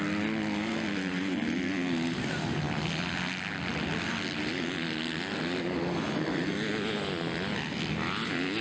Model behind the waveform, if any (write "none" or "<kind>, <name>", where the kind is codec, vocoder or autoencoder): none